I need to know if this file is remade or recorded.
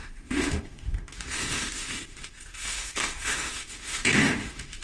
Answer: remade